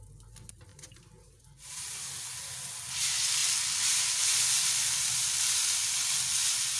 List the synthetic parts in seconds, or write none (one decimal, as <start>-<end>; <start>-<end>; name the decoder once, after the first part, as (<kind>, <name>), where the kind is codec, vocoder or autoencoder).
0.7-2.1 (vocoder, BigVGAN v2)